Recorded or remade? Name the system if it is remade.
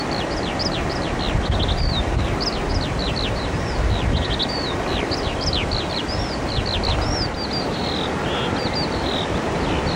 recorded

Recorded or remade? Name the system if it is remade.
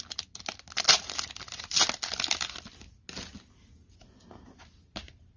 recorded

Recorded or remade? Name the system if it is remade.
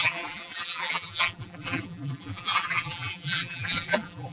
remade, vocoder, BigVGAN v2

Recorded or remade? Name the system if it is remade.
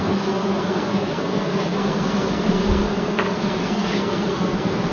remade, codec, SNAC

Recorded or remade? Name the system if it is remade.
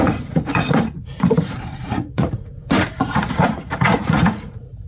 remade, vocoder, Vocos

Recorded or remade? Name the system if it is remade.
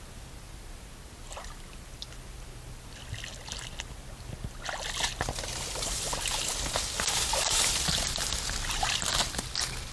recorded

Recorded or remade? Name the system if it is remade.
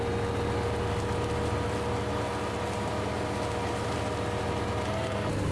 recorded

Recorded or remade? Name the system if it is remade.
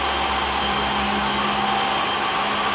recorded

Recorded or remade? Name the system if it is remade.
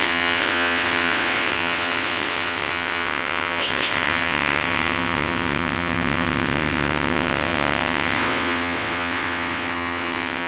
remade, vocoder, WaveNeXt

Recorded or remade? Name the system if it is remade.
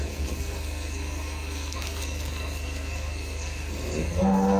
remade, codec, SNAC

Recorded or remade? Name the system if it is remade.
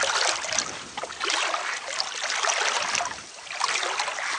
recorded